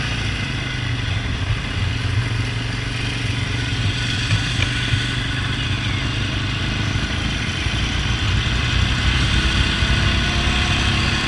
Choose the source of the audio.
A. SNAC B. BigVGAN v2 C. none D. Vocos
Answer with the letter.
C